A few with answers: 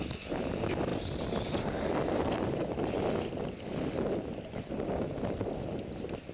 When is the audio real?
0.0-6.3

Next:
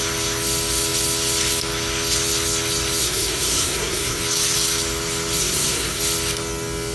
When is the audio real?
0.0-3.0; 4.2-5.4; 6.0-6.9

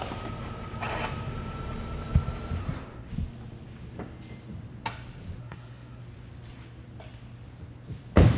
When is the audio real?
0.0-2.6; 3.1-5.4; 6.0-8.4

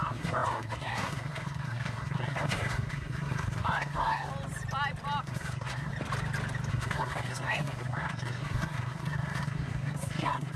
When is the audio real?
4.3-5.2; 5.9-6.7

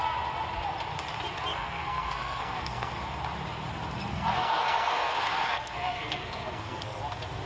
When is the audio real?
0.0-1.5; 2.9-4.1; 7.0-7.5

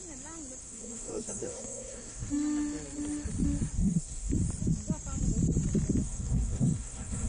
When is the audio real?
0.0-0.6; 2.3-3.8; 4.3-6.0

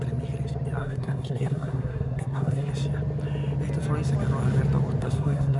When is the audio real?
0.0-0.8; 2.7-5.0